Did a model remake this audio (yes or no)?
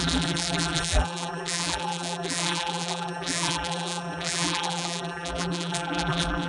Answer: yes